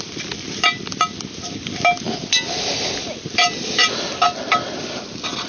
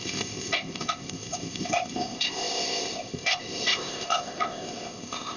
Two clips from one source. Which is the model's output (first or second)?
second